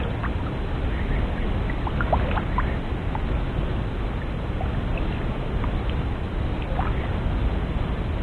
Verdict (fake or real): real